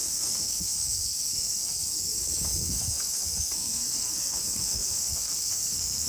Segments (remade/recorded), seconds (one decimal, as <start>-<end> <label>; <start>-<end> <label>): 0.0-6.1 remade